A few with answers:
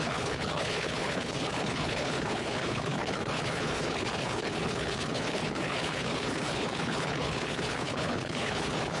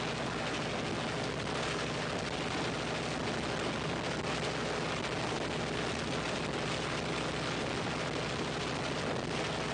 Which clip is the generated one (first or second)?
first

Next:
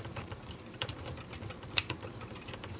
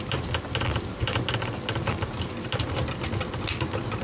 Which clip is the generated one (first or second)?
first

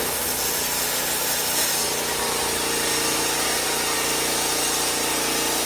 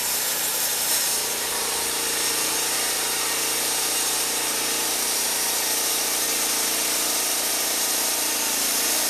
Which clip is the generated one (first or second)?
second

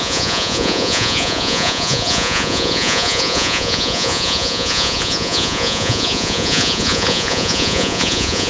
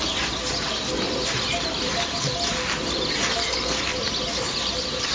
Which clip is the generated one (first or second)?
first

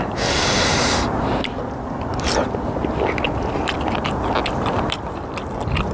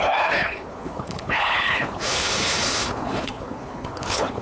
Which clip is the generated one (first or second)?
second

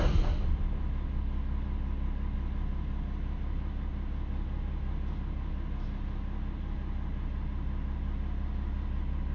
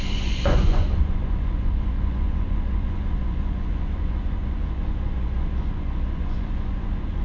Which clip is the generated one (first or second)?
second